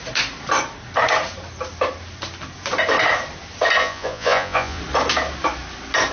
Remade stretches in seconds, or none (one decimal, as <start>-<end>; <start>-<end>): 3.8-4.8